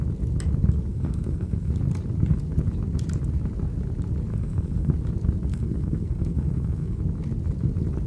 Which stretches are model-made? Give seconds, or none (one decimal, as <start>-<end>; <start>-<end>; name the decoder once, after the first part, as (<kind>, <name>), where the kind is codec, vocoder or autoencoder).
0.9-1.7 (codec, SNAC); 4.3-4.9; 5.5-7.0